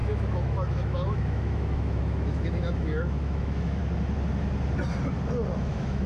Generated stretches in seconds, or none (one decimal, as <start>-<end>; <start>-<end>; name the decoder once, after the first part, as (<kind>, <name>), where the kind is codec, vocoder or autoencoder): 0.0-3.8 (autoencoder, DAC-VAE); 5.6-6.1